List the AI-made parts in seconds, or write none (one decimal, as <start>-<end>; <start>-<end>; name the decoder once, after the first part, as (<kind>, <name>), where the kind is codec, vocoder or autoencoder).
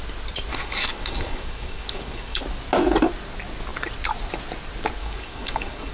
0.5-2.4 (codec, DAC); 5.0-5.9